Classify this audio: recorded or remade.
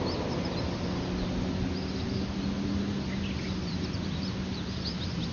recorded